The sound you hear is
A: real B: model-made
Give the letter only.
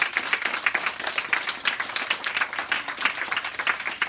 B